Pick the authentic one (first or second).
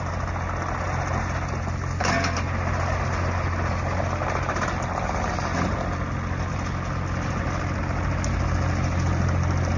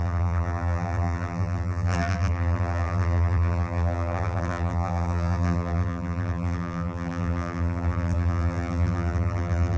first